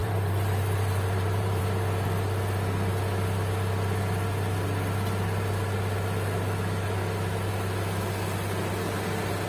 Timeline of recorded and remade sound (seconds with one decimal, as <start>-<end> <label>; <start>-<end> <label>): 0.0-1.6 remade; 1.6-9.5 recorded